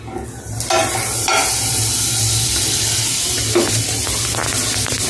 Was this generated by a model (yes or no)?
no